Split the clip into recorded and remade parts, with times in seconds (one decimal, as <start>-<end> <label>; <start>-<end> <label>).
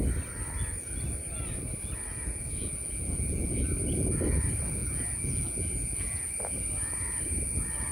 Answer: 0.0-2.1 recorded; 2.1-3.6 remade; 3.6-4.8 recorded; 4.8-6.3 remade; 6.3-7.9 recorded